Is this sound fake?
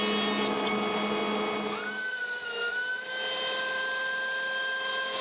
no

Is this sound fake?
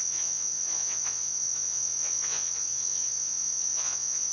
yes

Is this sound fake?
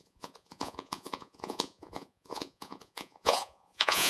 yes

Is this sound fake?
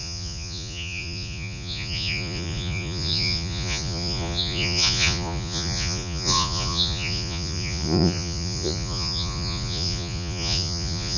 yes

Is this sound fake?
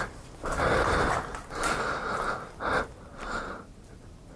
no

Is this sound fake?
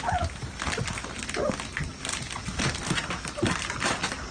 no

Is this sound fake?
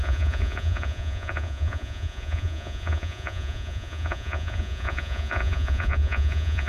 yes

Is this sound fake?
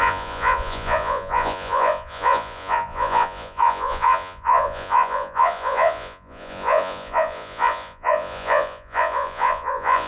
yes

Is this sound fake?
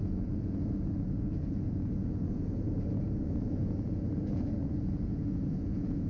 yes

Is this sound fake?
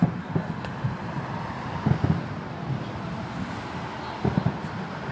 no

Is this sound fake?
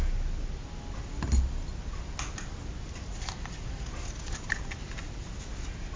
no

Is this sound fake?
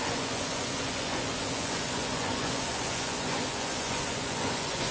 yes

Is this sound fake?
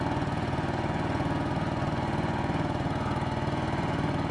yes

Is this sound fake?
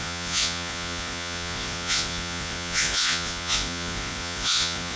yes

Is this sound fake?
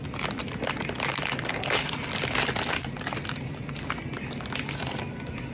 no